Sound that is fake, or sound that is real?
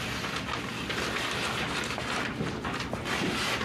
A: real